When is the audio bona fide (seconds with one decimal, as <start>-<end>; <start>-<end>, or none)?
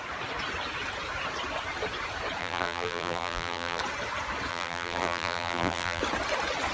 0.0-2.4; 3.8-4.5; 6.0-6.7